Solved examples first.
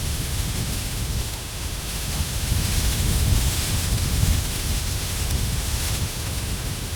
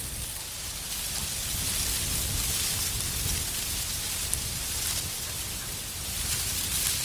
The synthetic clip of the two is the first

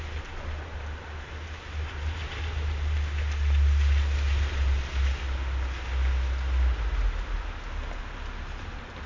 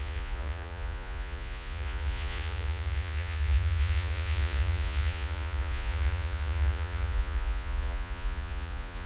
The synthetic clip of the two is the second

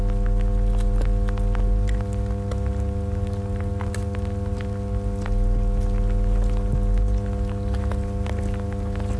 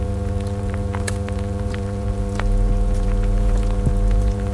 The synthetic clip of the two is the second